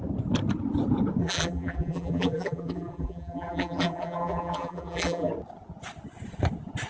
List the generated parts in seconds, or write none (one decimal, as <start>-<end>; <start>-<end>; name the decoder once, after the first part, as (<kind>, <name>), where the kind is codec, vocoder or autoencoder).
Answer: 1.2-5.3 (vocoder, BigVGAN v2)